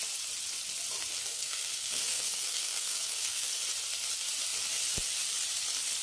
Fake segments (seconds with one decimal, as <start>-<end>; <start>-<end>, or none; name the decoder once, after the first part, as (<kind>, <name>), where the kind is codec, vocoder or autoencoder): 1.3-3.6 (codec, SNAC)